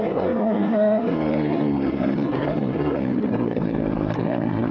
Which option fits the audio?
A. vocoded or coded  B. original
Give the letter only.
A